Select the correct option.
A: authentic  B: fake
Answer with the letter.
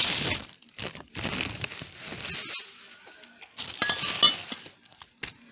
A